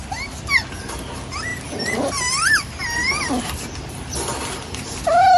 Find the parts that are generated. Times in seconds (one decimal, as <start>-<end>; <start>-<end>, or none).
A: 1.5-4.7

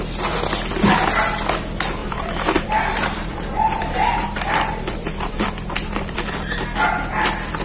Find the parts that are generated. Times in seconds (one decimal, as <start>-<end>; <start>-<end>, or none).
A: 2.0-6.6

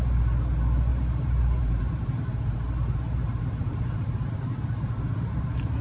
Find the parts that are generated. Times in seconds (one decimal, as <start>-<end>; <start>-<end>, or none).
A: 0.9-4.4

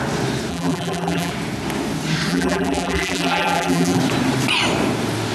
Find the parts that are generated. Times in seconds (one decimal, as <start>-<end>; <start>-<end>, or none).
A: 0.5-1.3; 2.3-4.0

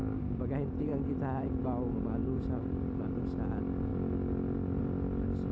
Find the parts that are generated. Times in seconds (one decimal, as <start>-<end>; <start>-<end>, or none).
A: 2.2-3.2

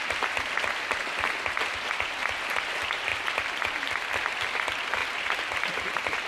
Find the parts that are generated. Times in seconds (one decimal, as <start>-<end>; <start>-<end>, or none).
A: 0.0-2.2; 2.7-5.0

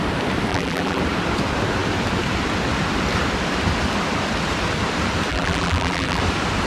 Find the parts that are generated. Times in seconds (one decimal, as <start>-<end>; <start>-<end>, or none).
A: 0.5-1.0; 5.3-6.2

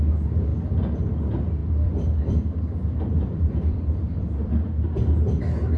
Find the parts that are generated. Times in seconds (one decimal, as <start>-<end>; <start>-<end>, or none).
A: 1.6-4.5